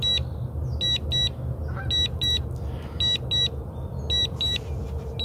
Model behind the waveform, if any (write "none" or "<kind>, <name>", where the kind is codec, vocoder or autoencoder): none